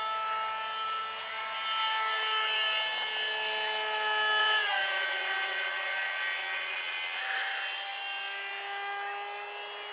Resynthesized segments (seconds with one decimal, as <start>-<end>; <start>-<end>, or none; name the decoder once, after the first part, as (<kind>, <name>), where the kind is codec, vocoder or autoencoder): 4.4-7.2 (vocoder, WaveNeXt)